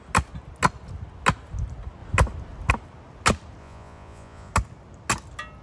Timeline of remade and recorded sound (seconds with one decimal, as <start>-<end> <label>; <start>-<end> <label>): 0.0-3.6 recorded; 3.6-4.5 remade; 4.5-5.6 recorded